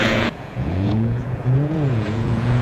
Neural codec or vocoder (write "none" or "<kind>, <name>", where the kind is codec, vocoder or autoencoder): vocoder, Vocos